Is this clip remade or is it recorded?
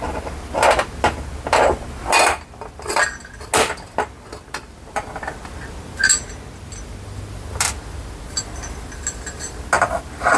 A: recorded